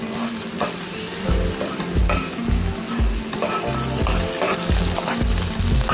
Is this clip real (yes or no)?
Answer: yes